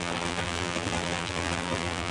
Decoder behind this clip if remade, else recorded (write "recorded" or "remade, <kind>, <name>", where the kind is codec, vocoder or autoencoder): remade, vocoder, BigVGAN v2